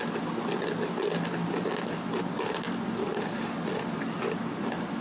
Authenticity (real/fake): real